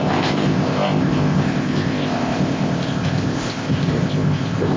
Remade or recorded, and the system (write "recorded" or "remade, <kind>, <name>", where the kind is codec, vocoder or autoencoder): remade, codec, ZipCodec